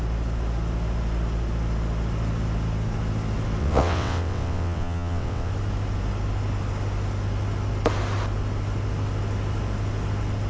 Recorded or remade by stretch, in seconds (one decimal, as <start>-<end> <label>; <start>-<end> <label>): 0.0-3.6 recorded; 3.6-5.5 remade; 5.5-10.5 recorded